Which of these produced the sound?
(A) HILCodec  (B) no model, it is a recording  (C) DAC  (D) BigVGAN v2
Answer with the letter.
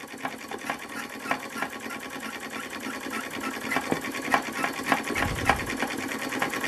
B